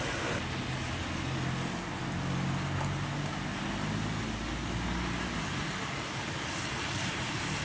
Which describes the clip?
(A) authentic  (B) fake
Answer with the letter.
A